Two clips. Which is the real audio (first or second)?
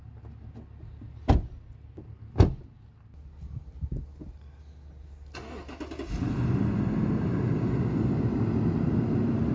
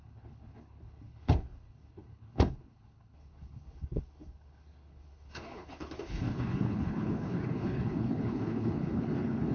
first